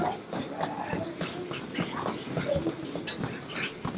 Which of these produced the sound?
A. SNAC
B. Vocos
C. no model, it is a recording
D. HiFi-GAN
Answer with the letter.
C